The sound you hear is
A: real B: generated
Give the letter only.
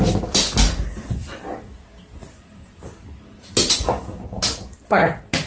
A